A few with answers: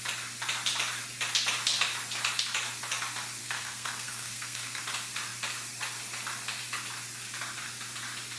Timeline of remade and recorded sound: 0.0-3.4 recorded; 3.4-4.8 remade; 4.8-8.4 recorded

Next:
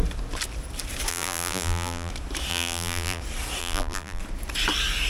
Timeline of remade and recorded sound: 0.0-1.1 recorded; 1.1-2.1 remade; 2.1-2.5 recorded; 2.5-3.2 remade; 3.2-3.6 recorded; 3.6-4.2 remade; 4.2-5.1 recorded

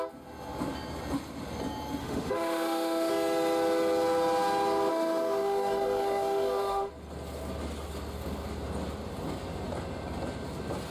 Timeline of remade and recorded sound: 0.0-2.0 recorded; 2.0-3.1 remade; 3.1-4.9 recorded; 4.9-6.9 remade; 6.9-10.9 recorded

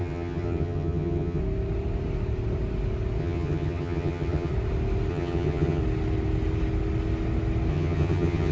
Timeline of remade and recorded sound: 0.0-1.4 remade; 1.4-3.2 recorded; 3.2-4.5 remade; 4.5-5.1 recorded; 5.1-5.8 remade; 5.8-7.7 recorded; 7.7-8.5 remade

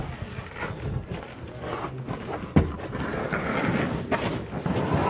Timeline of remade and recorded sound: 0.0-5.1 recorded

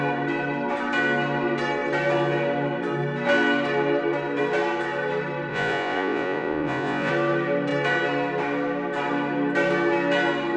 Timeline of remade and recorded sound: 0.0-5.5 recorded; 5.5-7.1 remade; 7.1-10.6 recorded